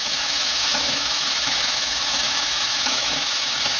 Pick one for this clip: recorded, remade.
remade